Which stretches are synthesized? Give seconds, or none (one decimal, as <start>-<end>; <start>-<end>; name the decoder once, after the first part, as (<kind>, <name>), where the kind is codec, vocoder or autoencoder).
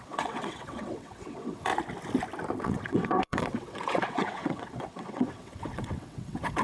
0.0-1.7 (vocoder, WaveNeXt); 2.6-6.6